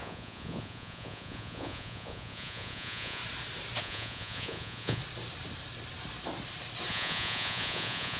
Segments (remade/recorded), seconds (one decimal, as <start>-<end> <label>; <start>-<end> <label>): 0.0-3.2 remade; 3.2-3.8 recorded; 3.8-5.0 remade; 5.0-6.9 recorded; 6.9-8.2 remade